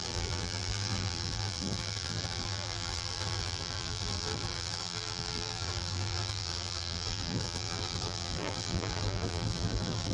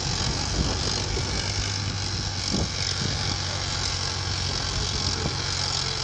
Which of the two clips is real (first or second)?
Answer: second